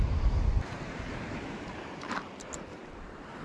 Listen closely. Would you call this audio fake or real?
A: fake